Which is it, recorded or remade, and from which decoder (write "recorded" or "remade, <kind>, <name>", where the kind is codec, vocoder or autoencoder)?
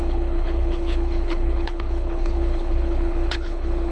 remade, codec, HILCodec